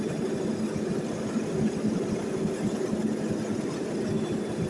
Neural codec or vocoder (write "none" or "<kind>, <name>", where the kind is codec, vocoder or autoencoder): none